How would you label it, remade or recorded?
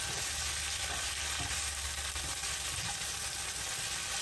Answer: recorded